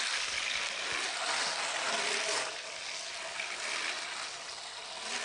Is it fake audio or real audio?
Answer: real